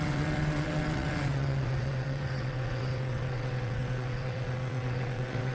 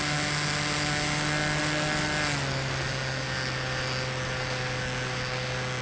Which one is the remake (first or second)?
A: first